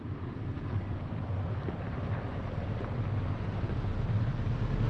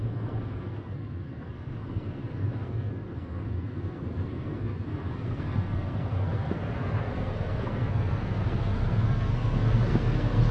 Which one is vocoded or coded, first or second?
second